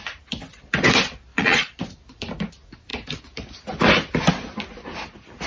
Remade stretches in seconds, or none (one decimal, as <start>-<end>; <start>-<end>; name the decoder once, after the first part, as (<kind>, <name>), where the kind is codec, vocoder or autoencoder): 1.3-1.8 (vocoder, Vocos)

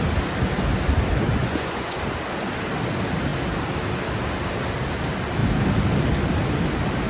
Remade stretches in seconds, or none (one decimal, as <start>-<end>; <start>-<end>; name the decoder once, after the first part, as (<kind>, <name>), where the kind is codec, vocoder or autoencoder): 1.4-2.0 (vocoder, Vocos)